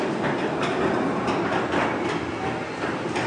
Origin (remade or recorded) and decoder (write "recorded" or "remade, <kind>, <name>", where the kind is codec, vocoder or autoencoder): recorded